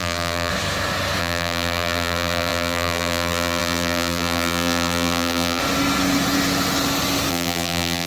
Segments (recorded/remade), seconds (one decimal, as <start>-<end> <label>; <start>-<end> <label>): 0.0-0.5 remade; 0.5-1.2 recorded; 1.2-5.6 remade; 5.6-7.3 recorded; 7.3-8.1 remade